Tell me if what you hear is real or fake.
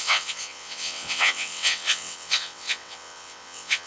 fake